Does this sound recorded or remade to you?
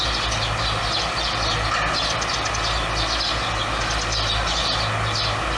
recorded